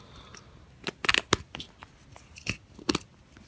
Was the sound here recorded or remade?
recorded